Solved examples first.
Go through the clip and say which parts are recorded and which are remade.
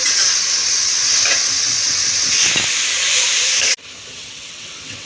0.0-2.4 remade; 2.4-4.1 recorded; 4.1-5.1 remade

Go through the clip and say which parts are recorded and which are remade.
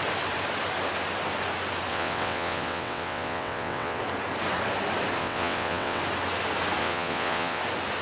0.0-1.9 recorded; 1.9-4.0 remade; 4.0-5.2 recorded; 5.2-6.0 remade; 6.0-6.8 recorded; 6.8-7.6 remade; 7.6-8.0 recorded